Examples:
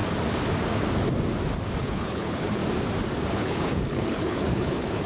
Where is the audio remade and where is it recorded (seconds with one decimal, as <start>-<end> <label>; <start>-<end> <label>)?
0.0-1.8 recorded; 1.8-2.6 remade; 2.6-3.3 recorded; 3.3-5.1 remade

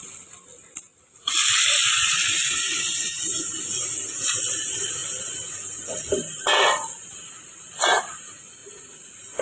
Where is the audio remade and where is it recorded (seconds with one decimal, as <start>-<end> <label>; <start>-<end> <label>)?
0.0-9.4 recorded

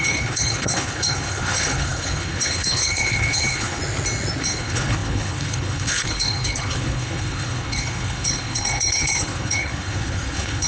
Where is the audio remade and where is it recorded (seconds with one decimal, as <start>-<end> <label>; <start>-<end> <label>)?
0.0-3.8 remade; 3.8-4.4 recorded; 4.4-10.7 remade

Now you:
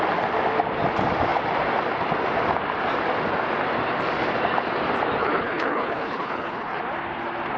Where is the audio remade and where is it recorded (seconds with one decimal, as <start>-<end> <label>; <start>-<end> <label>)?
0.0-5.2 recorded; 5.2-6.8 remade; 6.8-7.6 recorded

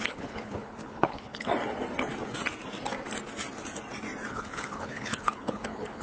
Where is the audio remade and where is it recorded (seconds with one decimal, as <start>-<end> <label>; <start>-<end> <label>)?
0.0-1.5 remade; 1.5-4.3 recorded; 4.3-6.0 remade

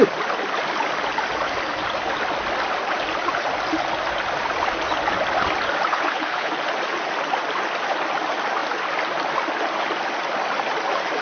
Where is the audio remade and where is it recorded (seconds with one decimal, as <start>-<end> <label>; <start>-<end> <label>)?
0.0-5.9 recorded; 5.9-6.5 remade; 6.5-11.2 recorded

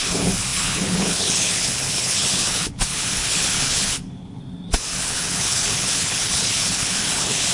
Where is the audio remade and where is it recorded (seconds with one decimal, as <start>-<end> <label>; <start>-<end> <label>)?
0.0-4.4 remade; 4.4-5.0 recorded; 5.0-7.5 remade

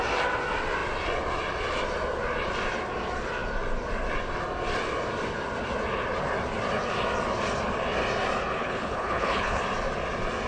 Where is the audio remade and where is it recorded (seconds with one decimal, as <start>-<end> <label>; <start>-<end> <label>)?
0.0-8.6 recorded; 8.6-9.6 remade; 9.6-10.5 recorded